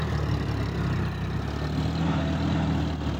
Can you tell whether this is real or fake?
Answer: real